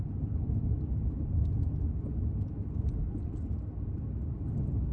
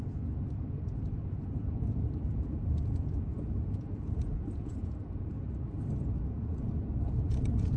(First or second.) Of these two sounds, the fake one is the second